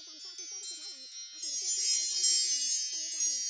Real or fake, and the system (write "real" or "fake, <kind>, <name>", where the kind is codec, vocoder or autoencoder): real